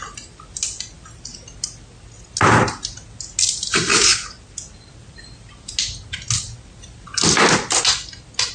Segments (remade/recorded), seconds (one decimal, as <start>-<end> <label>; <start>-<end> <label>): 0.0-8.5 recorded